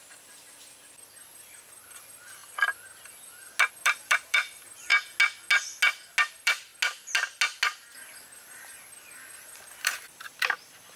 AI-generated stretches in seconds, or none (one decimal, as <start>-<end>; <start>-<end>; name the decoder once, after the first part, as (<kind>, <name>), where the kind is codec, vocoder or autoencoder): 0.0-2.4 (vocoder, BigVGAN v2); 3.7-4.9; 6.3-6.7; 8.2-11.0